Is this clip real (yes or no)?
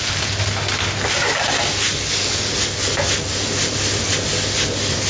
yes